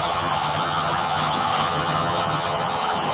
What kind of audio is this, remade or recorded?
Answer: remade